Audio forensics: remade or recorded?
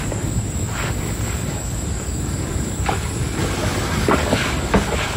remade